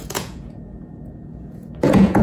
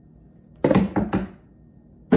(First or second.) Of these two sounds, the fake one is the first